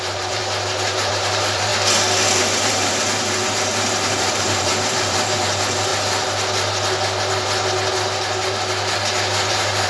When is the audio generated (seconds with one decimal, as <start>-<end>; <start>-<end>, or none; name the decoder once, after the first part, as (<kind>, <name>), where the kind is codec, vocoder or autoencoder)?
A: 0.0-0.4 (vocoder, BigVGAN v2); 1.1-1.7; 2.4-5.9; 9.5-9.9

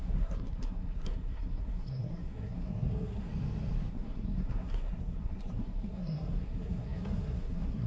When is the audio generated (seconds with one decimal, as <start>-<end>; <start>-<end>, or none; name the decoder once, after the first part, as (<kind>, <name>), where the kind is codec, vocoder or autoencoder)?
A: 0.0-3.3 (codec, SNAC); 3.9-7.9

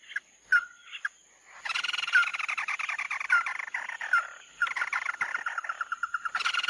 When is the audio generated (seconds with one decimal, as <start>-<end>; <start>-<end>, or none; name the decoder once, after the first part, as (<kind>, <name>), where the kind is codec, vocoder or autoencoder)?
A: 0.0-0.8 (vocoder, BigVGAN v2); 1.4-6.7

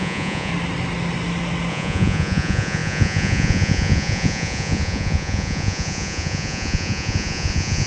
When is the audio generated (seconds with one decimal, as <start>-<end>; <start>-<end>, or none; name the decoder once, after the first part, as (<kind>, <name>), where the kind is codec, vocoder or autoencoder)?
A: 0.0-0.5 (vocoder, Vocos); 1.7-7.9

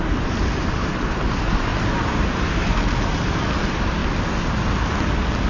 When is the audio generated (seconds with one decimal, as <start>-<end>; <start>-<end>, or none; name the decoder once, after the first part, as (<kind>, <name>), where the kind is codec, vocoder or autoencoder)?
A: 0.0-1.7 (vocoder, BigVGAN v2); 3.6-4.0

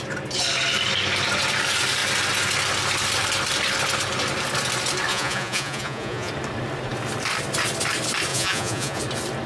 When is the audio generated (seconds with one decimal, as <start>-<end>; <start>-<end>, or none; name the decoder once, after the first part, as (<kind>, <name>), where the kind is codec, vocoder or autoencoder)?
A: 5.1-6.3 (vocoder, Vocos); 8.3-9.0

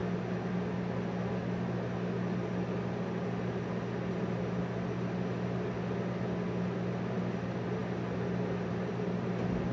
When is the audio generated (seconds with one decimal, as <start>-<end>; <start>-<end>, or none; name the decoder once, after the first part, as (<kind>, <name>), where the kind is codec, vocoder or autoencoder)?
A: none